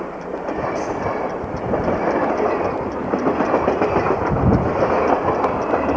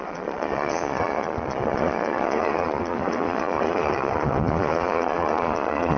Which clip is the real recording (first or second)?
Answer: first